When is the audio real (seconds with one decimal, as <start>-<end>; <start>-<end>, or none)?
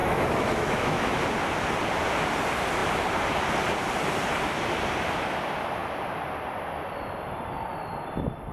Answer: 1.2-8.5